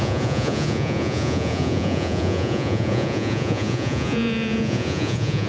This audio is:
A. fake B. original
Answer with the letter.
A